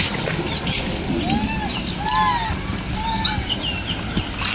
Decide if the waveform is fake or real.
real